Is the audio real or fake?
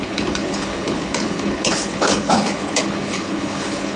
fake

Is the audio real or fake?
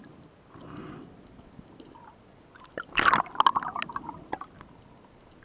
real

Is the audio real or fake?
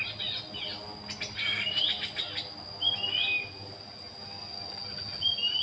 real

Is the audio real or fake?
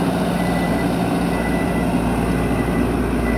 real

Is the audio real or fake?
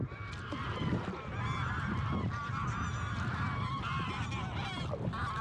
real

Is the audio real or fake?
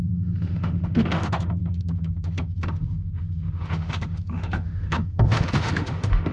fake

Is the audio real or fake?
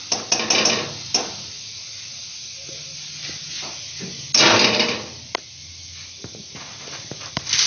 real